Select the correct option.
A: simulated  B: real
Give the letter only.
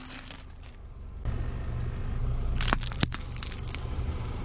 B